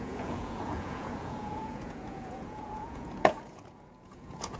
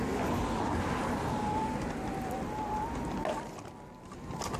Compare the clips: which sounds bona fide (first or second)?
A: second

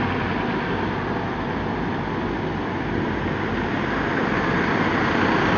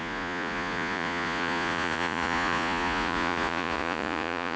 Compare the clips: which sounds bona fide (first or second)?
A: first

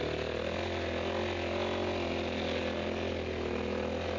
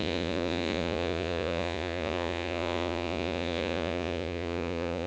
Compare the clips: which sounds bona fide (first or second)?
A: first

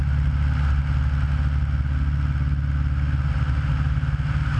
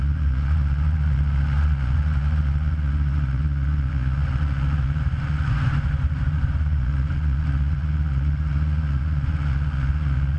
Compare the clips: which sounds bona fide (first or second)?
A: first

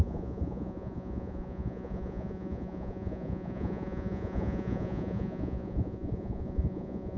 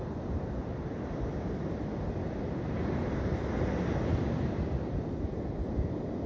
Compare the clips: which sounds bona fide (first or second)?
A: second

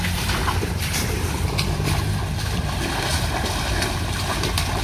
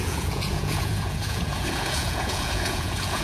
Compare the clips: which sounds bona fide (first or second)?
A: first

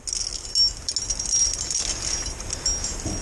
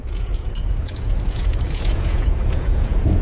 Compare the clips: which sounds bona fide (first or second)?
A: first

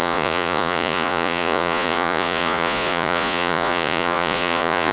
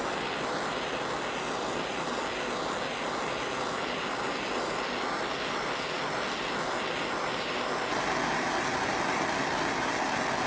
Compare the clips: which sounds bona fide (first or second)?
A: second